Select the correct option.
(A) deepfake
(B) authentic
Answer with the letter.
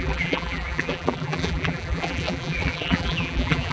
A